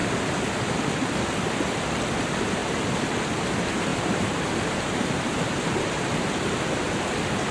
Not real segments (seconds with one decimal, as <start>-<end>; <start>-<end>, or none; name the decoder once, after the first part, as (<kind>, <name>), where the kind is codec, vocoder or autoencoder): 2.6-3.1 (vocoder, BigVGAN v2); 3.9-6.0